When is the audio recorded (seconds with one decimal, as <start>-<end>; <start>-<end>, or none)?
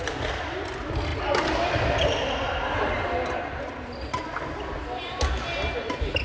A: 0.0-6.2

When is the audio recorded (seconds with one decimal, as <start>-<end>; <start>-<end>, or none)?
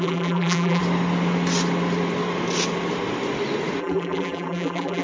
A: 0.8-3.8